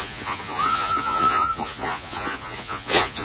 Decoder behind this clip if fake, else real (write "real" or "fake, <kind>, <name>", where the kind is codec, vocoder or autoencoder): fake, vocoder, Vocos